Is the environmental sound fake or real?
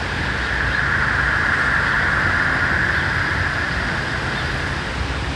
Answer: real